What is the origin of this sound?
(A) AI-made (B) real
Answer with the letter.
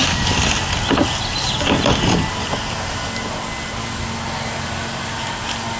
B